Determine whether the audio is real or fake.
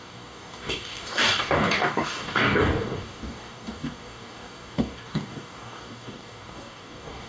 fake